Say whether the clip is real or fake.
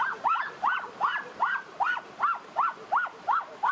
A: real